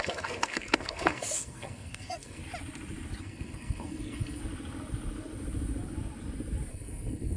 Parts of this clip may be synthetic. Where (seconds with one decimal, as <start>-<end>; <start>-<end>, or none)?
0.0-2.4; 3.2-4.4; 6.7-7.4